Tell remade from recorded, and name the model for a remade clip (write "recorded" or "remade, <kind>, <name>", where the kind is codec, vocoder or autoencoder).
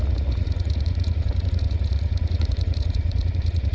remade, vocoder, Vocos